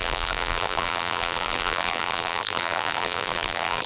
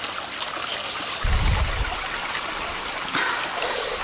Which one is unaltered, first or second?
second